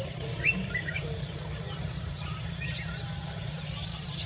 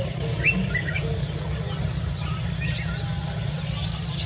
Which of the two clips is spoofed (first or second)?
first